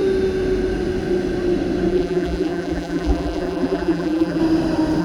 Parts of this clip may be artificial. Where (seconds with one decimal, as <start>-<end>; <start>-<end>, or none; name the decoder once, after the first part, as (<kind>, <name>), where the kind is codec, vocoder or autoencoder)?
1.9-4.4 (vocoder, BigVGAN v2)